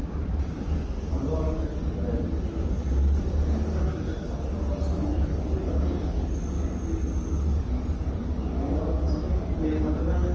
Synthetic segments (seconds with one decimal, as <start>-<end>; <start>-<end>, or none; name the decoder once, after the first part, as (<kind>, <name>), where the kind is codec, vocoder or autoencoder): none